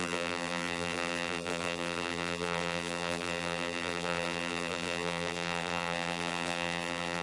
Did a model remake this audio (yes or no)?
yes